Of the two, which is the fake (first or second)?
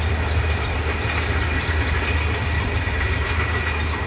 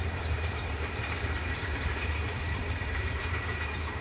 second